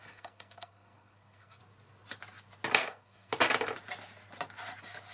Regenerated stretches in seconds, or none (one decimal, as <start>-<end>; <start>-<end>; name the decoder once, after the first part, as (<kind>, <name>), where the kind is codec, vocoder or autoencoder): 0.0-1.6 (codec, SNAC); 2.8-3.3